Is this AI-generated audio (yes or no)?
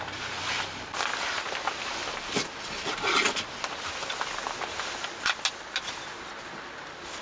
no